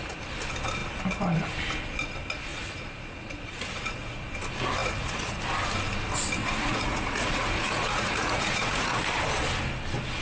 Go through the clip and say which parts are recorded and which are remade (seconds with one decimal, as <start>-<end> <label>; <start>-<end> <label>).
0.0-2.5 recorded; 2.5-4.3 remade; 4.3-4.8 recorded; 4.8-5.4 remade; 5.4-6.4 recorded; 6.4-9.0 remade; 9.0-10.2 recorded